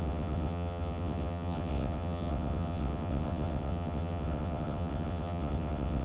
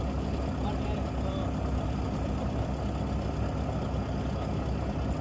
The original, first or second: second